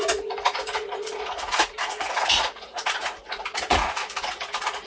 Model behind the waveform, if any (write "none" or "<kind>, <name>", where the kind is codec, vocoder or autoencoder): vocoder, Vocos